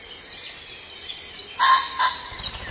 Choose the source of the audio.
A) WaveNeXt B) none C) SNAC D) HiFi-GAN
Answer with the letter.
B